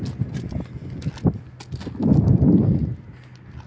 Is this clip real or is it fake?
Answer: real